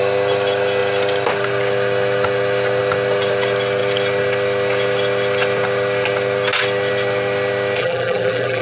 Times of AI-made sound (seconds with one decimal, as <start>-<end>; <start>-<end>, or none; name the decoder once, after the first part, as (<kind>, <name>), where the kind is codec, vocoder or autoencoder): 7.8-8.6 (vocoder, BigVGAN v2)